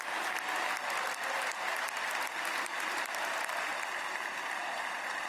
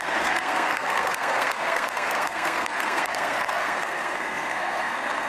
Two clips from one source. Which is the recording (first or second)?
first